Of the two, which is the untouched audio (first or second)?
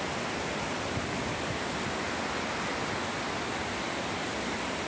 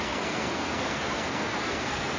first